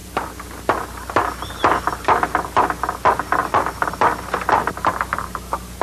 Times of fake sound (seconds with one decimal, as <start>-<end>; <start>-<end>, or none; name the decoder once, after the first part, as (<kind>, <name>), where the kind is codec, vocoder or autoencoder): none